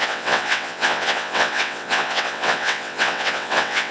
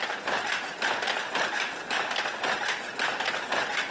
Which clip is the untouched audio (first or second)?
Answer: second